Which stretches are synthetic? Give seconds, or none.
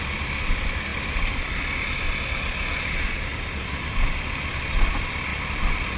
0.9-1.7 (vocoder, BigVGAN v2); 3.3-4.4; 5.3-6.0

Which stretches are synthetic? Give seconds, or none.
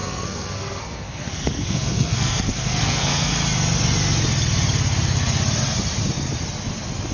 0.0-3.3 (codec, SNAC)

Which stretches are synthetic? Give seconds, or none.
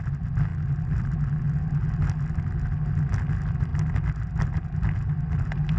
none